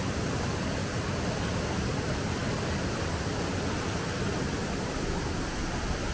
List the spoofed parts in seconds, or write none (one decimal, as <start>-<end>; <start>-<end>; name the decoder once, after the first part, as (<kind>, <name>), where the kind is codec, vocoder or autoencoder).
none